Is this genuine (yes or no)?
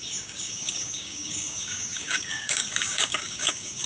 no